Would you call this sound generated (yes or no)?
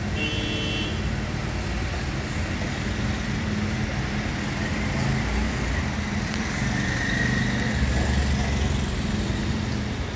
no